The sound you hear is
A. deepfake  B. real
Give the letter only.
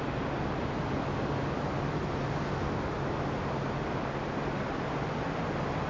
B